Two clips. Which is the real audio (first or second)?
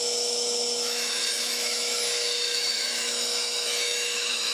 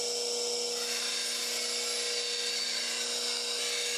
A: second